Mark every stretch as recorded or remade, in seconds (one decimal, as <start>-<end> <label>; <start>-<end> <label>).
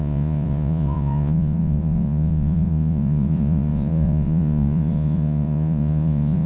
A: 0.0-6.5 remade